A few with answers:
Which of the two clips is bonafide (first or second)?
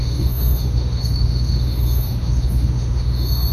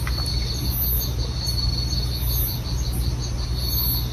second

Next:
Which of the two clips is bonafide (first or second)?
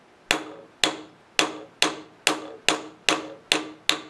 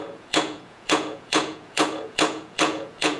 first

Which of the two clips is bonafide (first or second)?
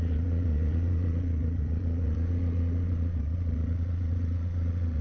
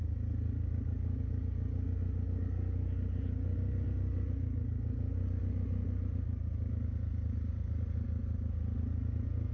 second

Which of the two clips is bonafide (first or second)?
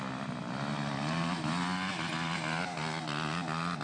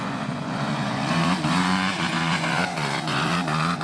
first